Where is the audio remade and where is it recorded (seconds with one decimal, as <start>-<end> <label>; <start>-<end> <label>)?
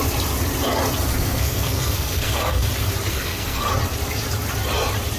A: 0.0-1.1 recorded; 1.1-2.7 remade; 2.7-3.1 recorded; 3.1-3.7 remade; 3.7-5.2 recorded